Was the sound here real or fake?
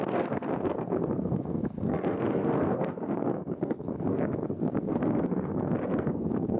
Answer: fake